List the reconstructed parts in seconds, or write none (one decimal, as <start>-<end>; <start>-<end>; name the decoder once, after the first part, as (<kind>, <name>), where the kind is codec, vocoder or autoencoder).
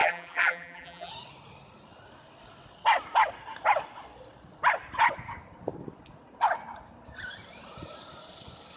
0.0-1.1 (vocoder, BigVGAN v2)